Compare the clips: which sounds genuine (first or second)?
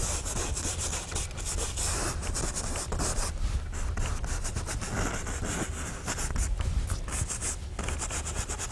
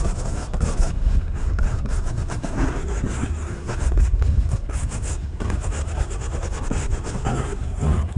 first